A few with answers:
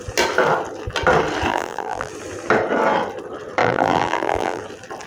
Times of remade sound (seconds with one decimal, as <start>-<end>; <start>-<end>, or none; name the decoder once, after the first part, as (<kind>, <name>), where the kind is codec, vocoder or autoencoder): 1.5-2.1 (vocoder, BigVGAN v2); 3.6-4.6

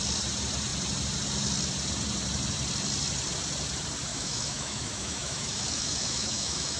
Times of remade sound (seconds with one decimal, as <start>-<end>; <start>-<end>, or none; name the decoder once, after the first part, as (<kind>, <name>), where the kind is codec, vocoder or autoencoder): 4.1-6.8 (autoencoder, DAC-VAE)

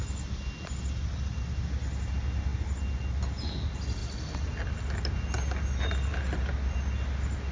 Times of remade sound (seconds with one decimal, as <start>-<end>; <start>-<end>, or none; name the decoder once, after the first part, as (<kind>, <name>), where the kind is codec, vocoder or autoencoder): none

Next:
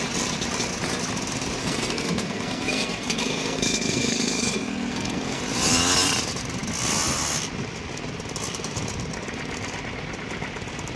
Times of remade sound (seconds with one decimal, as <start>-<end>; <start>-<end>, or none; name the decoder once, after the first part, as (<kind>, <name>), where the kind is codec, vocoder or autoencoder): 1.6-5.4 (codec, SNAC)

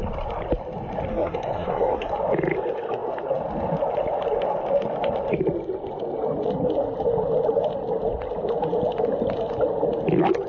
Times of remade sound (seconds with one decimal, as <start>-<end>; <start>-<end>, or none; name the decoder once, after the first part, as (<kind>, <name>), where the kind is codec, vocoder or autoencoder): 1.1-2.1 (codec, SNAC)

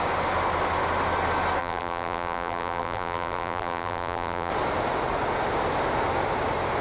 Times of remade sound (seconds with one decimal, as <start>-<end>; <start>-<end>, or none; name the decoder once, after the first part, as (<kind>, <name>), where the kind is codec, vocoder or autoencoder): 1.6-4.5 (vocoder, BigVGAN v2)

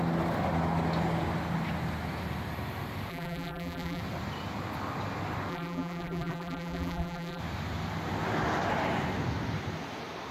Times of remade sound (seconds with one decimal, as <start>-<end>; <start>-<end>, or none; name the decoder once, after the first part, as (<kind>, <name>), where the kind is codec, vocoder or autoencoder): 3.1-4.0 (vocoder, BigVGAN v2); 5.5-7.4